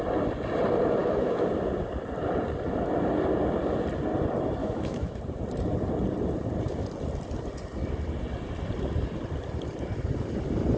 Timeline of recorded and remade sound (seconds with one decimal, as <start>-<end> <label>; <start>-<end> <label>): 0.0-1.0 recorded; 1.0-1.5 remade; 1.5-4.6 recorded; 4.6-5.2 remade; 5.2-10.8 recorded